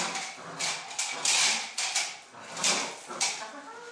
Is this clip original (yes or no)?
yes